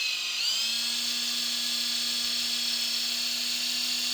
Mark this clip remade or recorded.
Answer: recorded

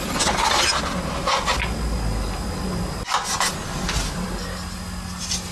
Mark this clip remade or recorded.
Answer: recorded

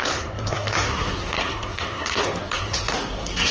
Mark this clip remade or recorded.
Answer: remade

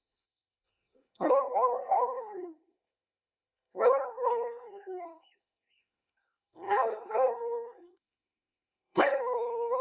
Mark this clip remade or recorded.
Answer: remade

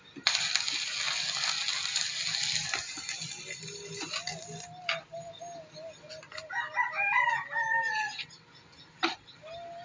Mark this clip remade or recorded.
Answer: recorded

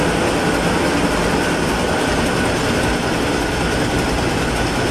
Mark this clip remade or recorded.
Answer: recorded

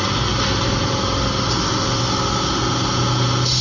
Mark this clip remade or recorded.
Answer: recorded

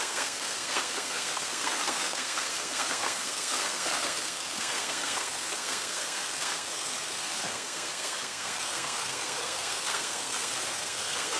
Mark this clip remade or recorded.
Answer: remade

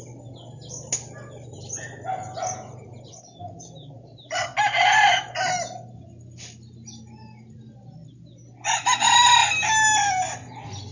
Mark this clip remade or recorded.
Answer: recorded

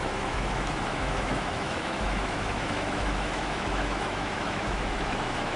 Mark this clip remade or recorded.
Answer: remade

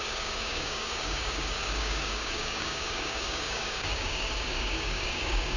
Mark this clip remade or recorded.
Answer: remade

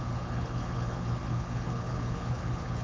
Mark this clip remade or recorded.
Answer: remade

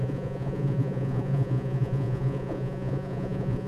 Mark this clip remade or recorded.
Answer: remade